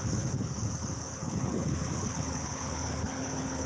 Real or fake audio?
fake